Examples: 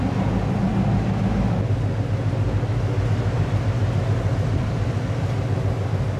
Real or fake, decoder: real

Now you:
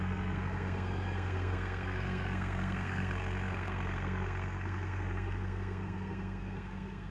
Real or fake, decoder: fake, codec, SNAC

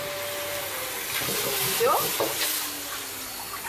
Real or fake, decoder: real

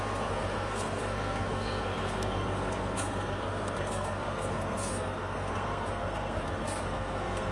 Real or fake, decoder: fake, codec, SNAC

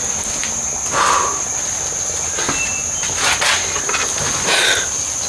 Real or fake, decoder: real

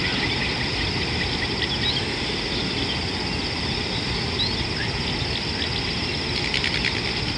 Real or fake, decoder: real